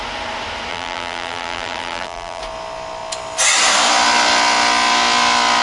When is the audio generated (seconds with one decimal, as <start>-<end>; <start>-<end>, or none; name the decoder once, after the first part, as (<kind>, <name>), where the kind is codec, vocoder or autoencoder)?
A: 0.7-2.4 (vocoder, BigVGAN v2)